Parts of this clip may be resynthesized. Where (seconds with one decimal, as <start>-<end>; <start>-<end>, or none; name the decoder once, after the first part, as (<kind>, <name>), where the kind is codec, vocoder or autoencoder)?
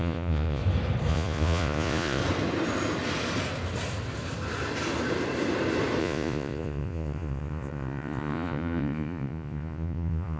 0.0-0.6 (vocoder, Vocos); 1.1-2.2; 6.0-10.4